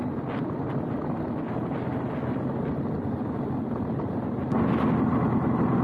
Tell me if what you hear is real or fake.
real